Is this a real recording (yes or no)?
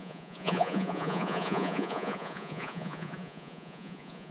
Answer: no